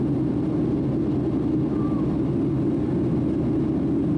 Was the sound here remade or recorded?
recorded